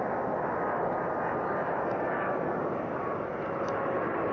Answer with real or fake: real